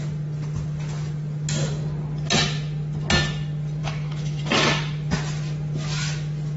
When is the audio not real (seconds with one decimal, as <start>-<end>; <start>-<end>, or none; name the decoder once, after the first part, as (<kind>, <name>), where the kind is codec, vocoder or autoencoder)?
3.8-4.4 (autoencoder, DAC-VAE)